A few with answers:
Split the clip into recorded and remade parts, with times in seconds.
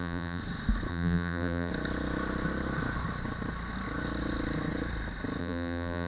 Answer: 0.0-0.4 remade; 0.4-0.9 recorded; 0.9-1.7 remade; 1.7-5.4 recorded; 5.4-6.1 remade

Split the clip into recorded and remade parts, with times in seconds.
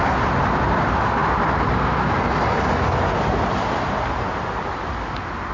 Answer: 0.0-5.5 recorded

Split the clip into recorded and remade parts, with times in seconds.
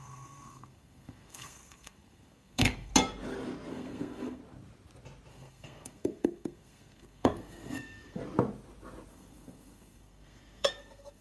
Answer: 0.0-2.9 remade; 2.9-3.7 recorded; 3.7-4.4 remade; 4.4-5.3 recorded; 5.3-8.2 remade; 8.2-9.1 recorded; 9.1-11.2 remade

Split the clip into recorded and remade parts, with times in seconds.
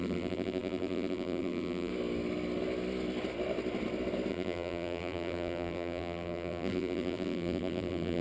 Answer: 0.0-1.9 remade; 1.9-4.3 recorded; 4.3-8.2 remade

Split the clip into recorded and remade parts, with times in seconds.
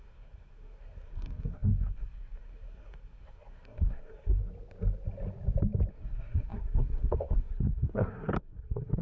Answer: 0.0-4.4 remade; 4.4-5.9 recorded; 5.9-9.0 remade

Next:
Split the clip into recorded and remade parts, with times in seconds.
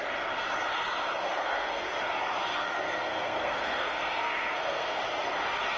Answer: 0.0-1.3 recorded; 1.3-1.9 remade; 1.9-2.5 recorded; 2.5-5.0 remade; 5.0-5.8 recorded